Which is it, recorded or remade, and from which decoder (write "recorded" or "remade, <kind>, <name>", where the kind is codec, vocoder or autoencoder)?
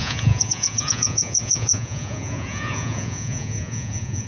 remade, vocoder, Vocos